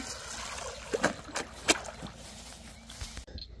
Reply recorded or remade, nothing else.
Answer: recorded